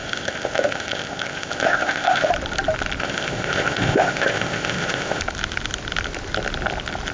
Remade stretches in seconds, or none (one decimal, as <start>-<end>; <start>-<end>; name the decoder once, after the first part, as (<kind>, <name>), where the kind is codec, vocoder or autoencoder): 0.0-2.3 (codec, ZipCodec); 3.0-5.2